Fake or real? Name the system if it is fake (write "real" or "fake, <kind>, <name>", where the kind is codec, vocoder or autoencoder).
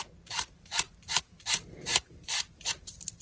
fake, vocoder, BigVGAN v2